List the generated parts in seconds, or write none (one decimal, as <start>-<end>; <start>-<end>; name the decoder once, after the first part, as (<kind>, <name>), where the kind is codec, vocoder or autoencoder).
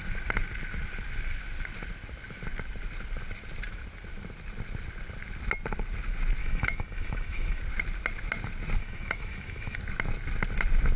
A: 6.4-7.6 (autoencoder, DAC-VAE); 8.8-9.8